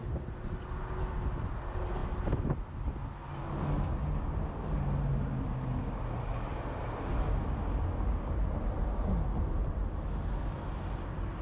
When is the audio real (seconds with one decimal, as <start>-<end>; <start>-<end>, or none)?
0.0-11.4